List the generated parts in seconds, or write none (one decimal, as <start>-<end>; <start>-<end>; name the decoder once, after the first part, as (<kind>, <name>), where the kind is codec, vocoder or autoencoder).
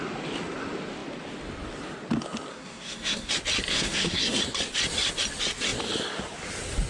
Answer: 2.5-3.3 (codec, SNAC); 3.7-4.4